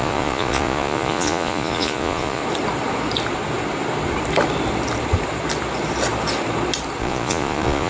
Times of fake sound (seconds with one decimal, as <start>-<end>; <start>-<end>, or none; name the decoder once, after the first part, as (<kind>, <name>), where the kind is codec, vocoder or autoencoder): 0.0-2.4 (vocoder, Vocos); 7.0-7.9

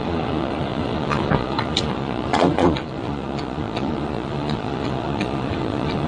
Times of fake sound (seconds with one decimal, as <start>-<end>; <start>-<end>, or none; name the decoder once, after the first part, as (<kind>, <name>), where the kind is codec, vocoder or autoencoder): 0.0-6.1 (vocoder, Vocos)

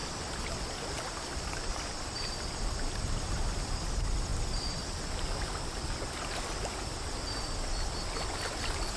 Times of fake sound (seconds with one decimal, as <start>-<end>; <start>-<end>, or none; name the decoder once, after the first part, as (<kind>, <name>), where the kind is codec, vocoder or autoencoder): none

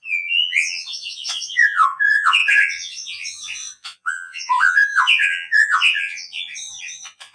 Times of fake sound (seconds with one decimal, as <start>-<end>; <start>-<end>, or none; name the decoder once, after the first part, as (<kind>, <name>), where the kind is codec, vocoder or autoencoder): 0.0-7.3 (vocoder, Vocos)

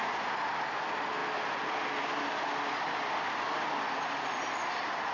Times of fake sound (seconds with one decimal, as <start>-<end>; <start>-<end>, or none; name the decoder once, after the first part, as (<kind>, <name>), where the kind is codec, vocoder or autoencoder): none